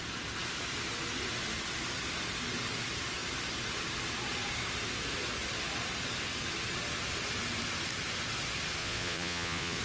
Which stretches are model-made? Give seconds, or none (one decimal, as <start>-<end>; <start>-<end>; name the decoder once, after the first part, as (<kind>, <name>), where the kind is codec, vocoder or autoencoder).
8.8-9.8 (vocoder, Vocos)